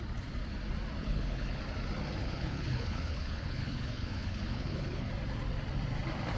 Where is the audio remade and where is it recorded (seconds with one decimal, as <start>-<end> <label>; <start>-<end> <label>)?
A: 0.0-1.0 recorded; 1.0-1.6 remade; 1.6-2.2 recorded; 2.2-5.1 remade; 5.1-6.4 recorded